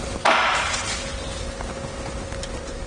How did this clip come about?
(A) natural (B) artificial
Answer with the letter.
A